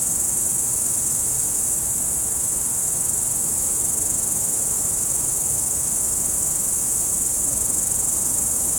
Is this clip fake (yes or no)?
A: yes